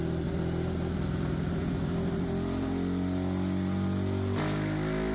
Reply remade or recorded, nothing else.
recorded